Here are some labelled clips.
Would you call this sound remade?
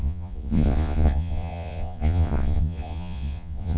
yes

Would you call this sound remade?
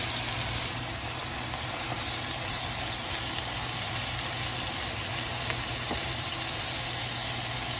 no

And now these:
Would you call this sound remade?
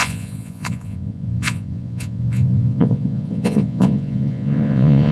yes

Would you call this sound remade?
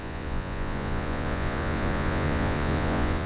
yes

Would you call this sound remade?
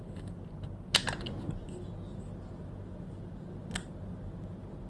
no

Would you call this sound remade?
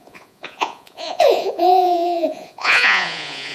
yes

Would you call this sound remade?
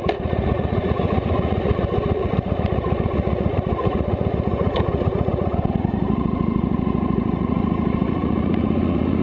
yes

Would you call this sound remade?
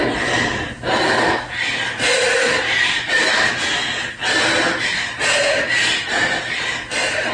no